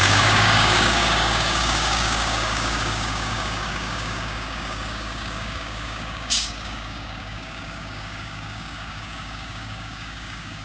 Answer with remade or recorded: remade